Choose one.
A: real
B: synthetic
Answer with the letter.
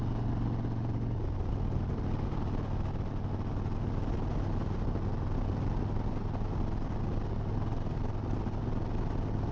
A